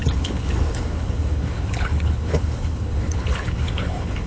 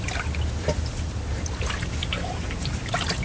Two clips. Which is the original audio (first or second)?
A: second